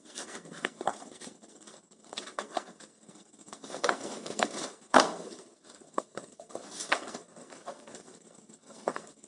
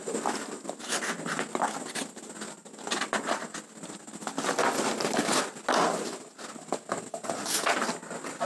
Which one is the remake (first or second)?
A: first